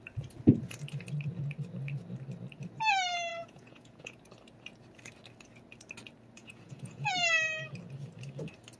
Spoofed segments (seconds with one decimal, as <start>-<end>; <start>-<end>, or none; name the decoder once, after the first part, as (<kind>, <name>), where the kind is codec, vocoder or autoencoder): 3.3-4.2 (vocoder, Vocos); 6.4-7.1